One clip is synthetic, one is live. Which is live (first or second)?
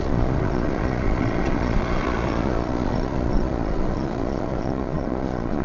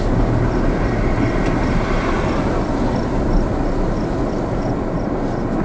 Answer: second